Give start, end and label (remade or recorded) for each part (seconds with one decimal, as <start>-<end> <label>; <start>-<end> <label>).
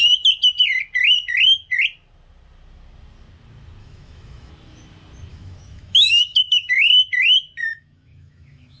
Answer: 0.0-3.8 recorded; 3.8-4.5 remade; 4.5-5.3 recorded; 5.3-6.9 remade; 6.9-7.7 recorded; 7.7-8.8 remade